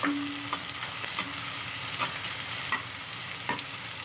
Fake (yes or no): no